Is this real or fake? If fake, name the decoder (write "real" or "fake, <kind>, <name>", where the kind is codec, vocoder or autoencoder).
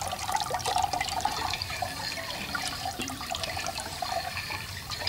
fake, vocoder, BigVGAN v2